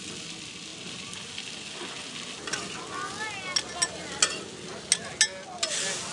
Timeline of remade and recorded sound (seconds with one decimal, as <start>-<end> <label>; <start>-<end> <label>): 0.0-6.1 recorded